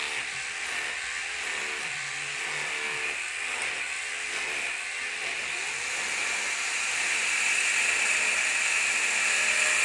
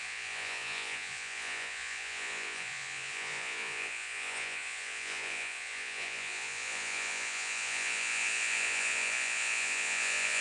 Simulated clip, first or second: second